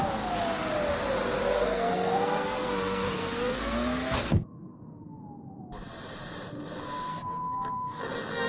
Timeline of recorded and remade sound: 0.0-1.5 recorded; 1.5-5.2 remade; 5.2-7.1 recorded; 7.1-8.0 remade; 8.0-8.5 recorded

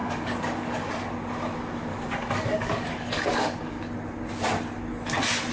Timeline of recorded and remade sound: 0.0-0.9 remade; 0.9-1.9 recorded; 1.9-3.8 remade; 3.8-5.5 recorded